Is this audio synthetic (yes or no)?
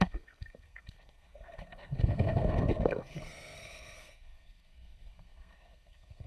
yes